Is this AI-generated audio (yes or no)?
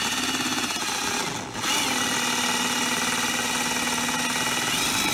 no